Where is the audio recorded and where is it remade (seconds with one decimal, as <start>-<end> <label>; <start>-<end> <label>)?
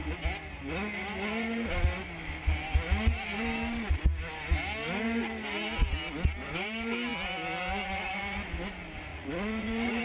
0.0-9.1 recorded; 9.1-10.0 remade